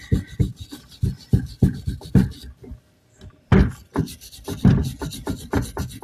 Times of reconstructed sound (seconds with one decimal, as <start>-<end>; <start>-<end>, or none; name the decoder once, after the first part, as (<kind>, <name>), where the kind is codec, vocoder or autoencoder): none